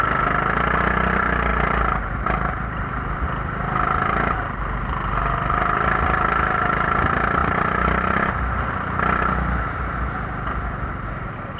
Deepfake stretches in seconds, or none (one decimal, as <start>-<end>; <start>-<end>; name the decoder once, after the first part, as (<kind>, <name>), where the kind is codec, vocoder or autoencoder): 1.5-3.1 (vocoder, BigVGAN v2); 7.4-8.4